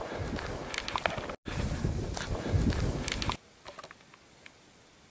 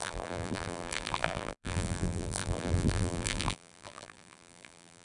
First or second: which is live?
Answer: first